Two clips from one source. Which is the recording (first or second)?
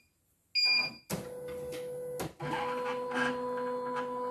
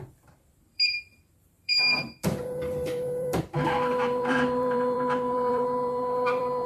first